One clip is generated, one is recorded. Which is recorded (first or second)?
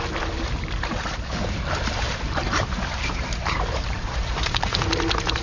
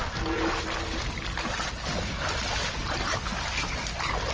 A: second